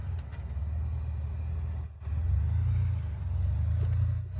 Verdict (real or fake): real